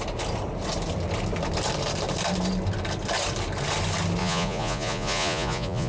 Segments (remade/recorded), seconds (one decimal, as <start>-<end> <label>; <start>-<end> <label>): 0.0-4.2 recorded; 4.2-5.9 remade